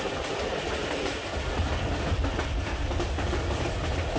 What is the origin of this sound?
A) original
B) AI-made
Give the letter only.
A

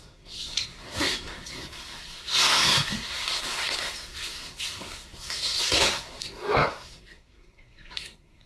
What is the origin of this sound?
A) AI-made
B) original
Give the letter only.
A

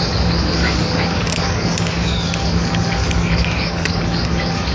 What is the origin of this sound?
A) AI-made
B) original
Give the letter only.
A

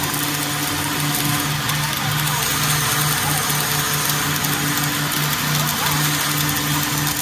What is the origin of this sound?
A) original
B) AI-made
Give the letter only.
A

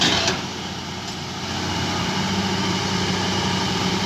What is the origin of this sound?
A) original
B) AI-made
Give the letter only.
A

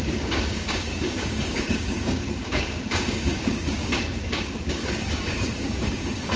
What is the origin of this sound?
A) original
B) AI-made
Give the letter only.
B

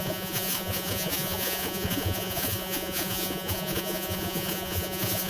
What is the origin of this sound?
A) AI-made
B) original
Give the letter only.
A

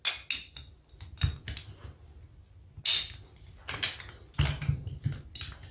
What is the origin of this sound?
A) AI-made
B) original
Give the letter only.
B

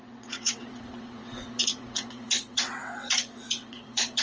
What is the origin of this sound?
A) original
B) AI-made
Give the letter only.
B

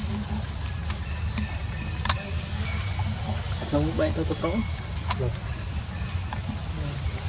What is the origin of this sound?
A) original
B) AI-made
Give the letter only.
A